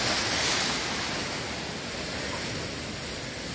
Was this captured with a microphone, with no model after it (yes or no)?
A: yes